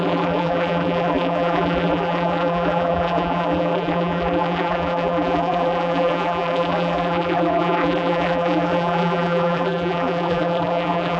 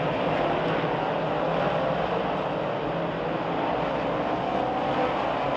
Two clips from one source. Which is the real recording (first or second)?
second